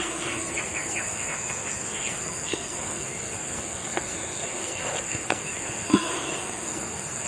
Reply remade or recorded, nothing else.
remade